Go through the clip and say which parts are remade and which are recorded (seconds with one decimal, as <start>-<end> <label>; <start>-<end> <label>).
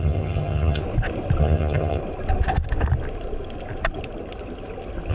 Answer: 0.0-0.8 remade; 0.8-1.4 recorded; 1.4-2.0 remade; 2.0-5.1 recorded